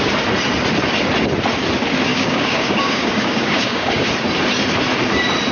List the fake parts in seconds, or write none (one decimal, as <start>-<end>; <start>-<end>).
2.1-4.1